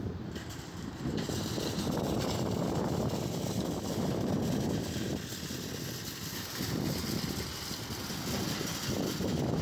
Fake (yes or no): no